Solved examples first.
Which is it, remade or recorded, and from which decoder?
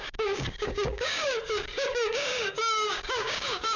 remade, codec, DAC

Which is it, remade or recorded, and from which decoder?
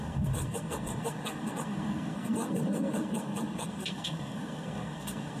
remade, codec, SNAC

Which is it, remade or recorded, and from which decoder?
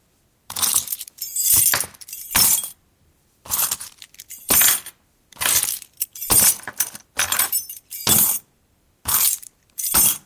remade, vocoder, BigVGAN v2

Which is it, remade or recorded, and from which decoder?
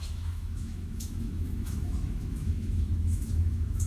remade, autoencoder, DAC-VAE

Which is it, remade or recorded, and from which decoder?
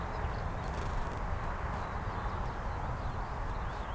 recorded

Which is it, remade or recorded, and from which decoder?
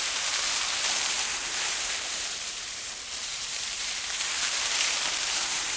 remade, vocoder, BigVGAN v2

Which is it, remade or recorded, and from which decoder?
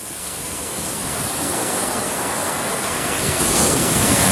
remade, codec, SNAC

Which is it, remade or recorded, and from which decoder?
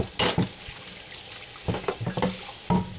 recorded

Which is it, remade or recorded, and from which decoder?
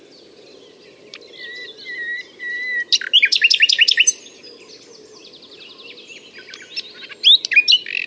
recorded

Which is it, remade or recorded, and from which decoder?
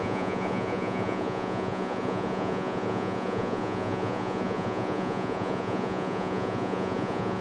remade, vocoder, Vocos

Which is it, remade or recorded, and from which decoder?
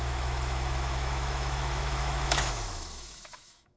remade, autoencoder, DAC-VAE